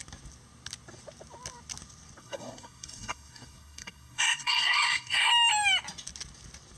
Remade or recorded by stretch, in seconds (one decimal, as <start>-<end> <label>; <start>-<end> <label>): 0.0-2.2 recorded; 2.2-5.3 remade; 5.3-6.8 recorded